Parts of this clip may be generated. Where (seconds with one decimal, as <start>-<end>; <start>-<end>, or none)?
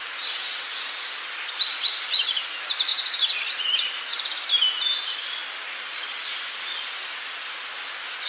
none